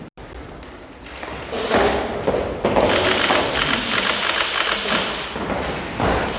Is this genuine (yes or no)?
yes